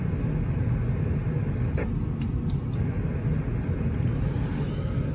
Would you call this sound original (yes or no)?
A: yes